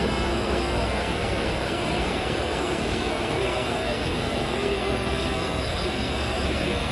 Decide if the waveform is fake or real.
fake